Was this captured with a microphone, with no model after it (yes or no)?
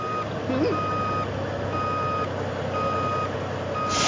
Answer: yes